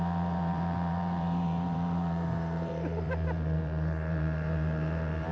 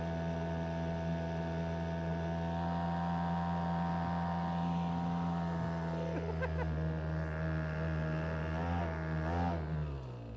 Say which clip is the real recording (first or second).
second